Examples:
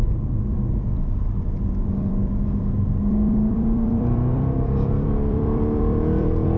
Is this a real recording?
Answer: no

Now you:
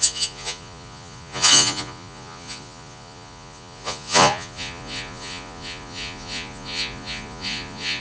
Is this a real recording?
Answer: no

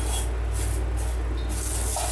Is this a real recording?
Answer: yes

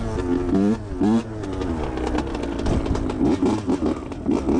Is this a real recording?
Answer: yes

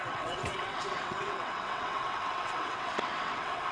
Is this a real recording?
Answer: no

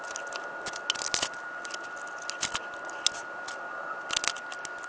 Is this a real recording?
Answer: yes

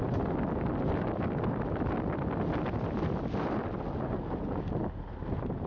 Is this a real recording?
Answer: yes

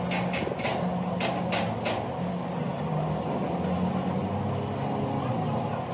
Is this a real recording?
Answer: yes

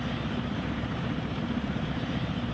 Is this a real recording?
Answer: yes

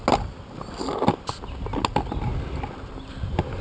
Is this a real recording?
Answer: yes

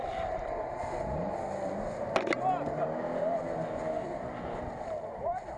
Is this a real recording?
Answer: yes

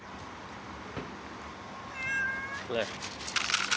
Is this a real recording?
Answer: yes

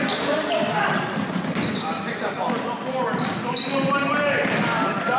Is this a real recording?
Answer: yes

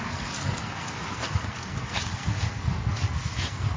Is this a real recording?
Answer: no